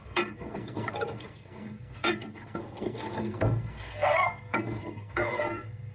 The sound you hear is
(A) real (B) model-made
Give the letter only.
B